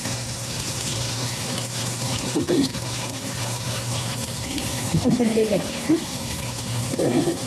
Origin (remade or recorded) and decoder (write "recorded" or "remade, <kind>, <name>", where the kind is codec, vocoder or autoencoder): remade, codec, SNAC